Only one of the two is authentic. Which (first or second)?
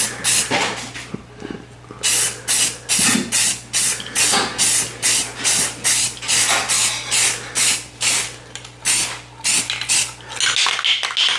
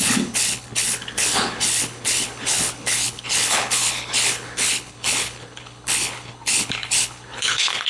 first